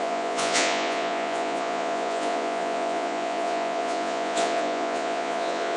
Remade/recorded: remade